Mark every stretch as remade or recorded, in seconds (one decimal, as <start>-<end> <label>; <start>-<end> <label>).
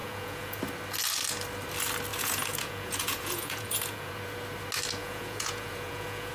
0.0-0.6 remade; 0.6-2.1 recorded; 2.1-4.1 remade; 4.1-5.0 recorded; 5.0-6.3 remade